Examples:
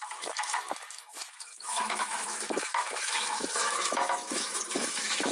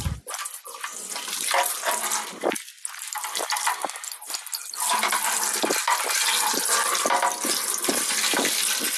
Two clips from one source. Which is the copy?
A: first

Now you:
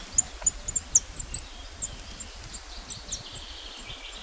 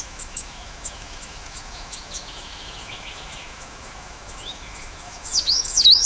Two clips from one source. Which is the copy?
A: second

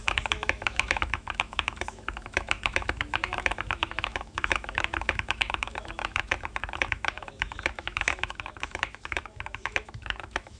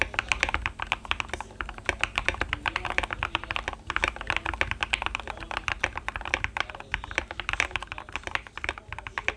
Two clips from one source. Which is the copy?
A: first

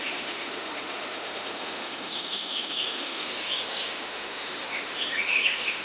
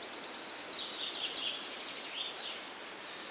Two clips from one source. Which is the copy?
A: first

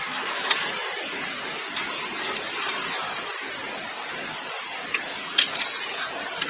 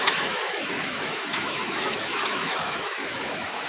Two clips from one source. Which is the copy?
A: second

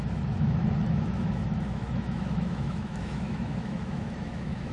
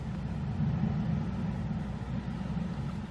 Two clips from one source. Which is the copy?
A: first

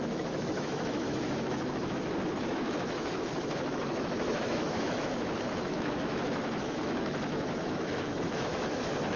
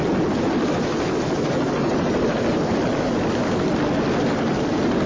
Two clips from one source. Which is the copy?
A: first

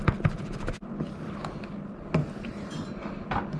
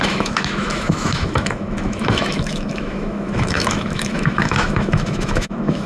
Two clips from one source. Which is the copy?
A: second